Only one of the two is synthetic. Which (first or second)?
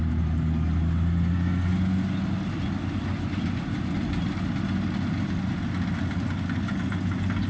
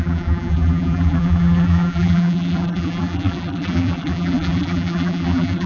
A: second